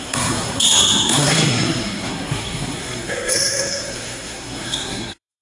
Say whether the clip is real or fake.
fake